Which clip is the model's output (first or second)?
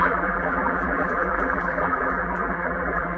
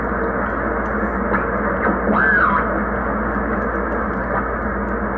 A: first